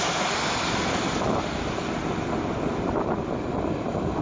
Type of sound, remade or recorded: recorded